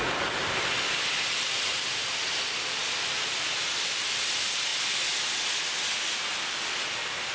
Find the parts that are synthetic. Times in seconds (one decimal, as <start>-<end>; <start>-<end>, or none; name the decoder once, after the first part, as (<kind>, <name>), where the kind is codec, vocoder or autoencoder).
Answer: none